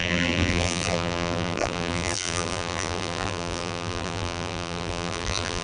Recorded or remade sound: remade